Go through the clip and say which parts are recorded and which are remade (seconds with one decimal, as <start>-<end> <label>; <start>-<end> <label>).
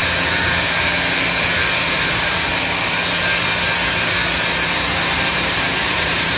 0.0-1.6 recorded; 1.6-2.5 remade; 2.5-4.8 recorded; 4.8-6.4 remade